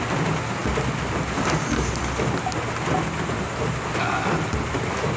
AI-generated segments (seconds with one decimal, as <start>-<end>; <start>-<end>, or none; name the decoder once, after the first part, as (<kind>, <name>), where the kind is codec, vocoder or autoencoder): none